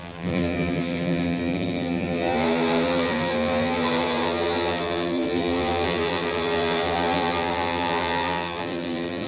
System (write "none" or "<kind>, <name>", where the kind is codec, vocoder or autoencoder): vocoder, BigVGAN v2